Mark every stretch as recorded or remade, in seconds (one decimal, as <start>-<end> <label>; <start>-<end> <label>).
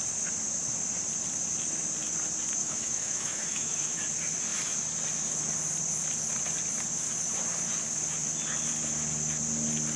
0.0-2.6 recorded; 2.6-4.0 remade; 4.0-10.0 recorded